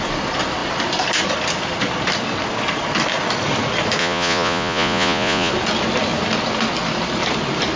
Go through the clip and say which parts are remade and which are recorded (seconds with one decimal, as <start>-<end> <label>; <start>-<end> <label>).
0.0-4.0 recorded; 4.0-5.5 remade; 5.5-7.8 recorded